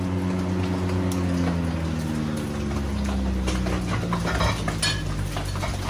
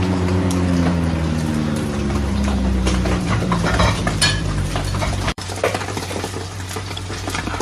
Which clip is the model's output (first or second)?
second